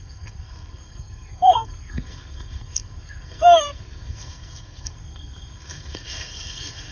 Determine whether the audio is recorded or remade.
remade